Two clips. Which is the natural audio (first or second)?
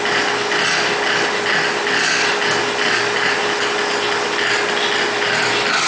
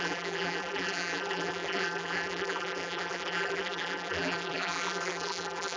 first